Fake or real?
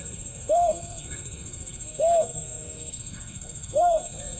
fake